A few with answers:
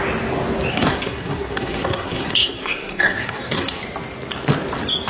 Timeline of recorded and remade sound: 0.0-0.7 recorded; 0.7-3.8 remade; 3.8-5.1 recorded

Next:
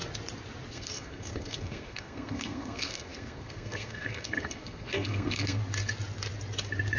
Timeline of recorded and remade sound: 0.0-0.7 recorded; 0.7-5.6 remade; 5.6-7.0 recorded

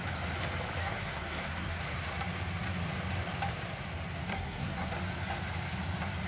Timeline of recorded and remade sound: 0.0-0.8 recorded; 0.8-1.8 remade; 1.8-4.3 recorded; 4.3-4.9 remade; 4.9-6.3 recorded

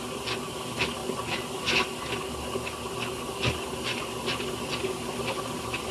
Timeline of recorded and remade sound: 0.0-5.9 recorded